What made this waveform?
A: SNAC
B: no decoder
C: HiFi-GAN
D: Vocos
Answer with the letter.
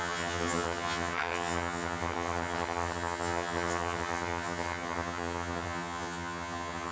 C